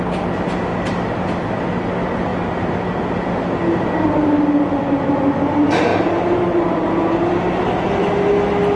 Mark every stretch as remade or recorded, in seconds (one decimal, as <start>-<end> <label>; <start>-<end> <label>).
0.0-0.7 recorded; 0.7-1.6 remade; 1.6-5.9 recorded; 5.9-6.9 remade; 6.9-8.8 recorded